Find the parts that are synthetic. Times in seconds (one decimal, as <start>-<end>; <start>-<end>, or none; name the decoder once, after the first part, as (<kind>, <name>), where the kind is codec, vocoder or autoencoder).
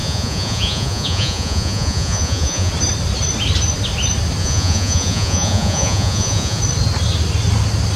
0.0-2.7 (vocoder, Vocos); 4.4-6.6